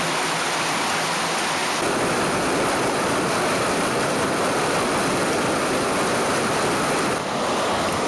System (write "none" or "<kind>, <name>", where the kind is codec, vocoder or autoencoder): none